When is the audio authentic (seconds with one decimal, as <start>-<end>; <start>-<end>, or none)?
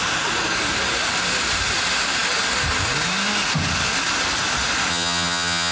0.0-4.9